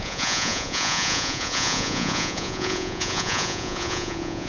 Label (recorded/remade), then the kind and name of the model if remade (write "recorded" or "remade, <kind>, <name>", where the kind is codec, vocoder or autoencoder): remade, vocoder, Vocos